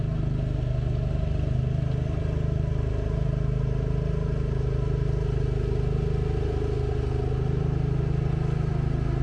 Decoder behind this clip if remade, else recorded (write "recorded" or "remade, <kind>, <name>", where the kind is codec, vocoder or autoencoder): recorded